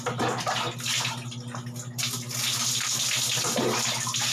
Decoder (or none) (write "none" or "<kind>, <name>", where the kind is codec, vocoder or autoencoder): none